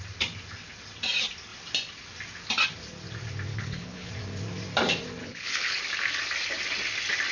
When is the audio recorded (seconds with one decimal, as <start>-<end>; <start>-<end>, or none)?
0.0-3.5; 4.1-5.2; 5.8-7.3